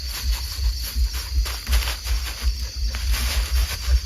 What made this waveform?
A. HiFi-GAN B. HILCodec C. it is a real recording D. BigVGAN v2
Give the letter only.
C